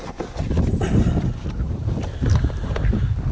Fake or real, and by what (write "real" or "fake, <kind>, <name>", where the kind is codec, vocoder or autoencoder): real